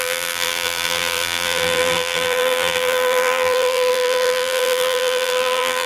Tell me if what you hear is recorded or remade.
remade